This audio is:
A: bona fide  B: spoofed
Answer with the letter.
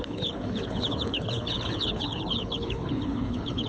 B